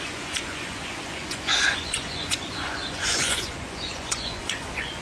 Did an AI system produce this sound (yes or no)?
yes